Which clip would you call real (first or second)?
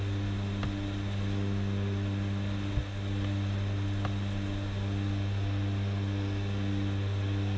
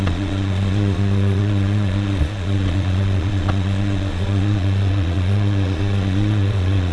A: first